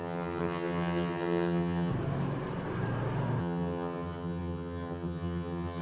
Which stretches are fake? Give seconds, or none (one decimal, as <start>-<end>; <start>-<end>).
0.0-1.9; 3.4-5.8